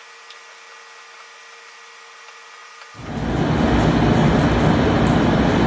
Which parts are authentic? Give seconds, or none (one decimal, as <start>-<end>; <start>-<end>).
0.0-5.7